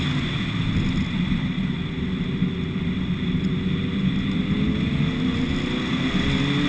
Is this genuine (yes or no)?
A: yes